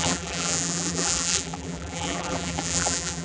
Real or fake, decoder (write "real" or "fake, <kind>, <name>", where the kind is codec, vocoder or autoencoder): fake, vocoder, BigVGAN v2